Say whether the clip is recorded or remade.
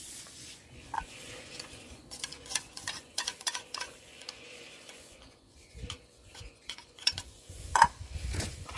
remade